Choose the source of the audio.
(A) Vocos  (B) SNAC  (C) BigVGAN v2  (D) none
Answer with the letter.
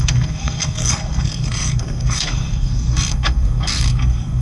B